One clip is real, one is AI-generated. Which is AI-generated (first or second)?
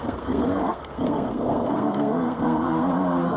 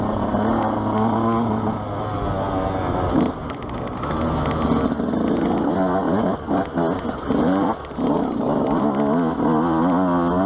first